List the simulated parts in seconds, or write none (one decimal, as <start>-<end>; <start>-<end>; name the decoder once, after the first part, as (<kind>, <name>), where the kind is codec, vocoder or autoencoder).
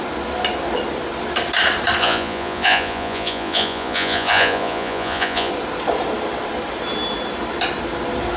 2.0-5.5 (vocoder, Vocos)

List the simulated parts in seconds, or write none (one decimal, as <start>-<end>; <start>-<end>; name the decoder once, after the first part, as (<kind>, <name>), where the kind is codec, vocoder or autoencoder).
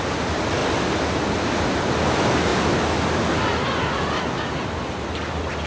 none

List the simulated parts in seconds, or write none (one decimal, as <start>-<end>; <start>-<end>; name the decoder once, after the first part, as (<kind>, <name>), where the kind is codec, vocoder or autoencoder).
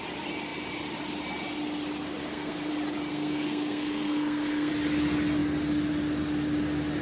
2.2-2.7 (codec, SNAC); 3.1-4.7